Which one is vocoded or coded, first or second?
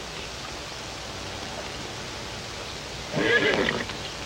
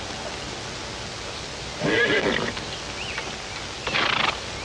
first